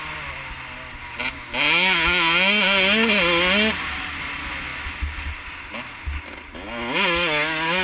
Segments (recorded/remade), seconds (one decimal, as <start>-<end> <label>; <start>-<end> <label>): 0.0-7.8 recorded